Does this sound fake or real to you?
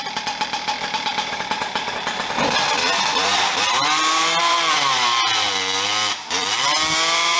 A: fake